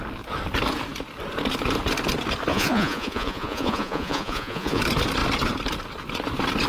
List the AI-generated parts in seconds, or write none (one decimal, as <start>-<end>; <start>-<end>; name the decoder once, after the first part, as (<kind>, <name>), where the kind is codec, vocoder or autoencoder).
2.5-4.8 (vocoder, Vocos)